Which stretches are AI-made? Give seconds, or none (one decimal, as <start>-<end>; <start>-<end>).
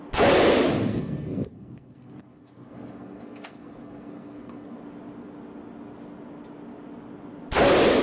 0.9-4.8